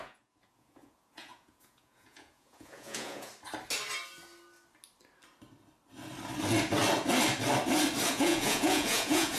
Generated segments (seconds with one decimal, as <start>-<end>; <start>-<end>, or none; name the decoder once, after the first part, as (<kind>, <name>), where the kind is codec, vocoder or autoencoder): 0.0-3.3 (vocoder, Vocos); 8.1-9.4